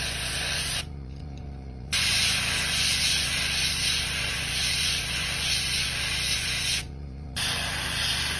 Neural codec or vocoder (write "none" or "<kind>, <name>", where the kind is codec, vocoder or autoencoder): vocoder, Vocos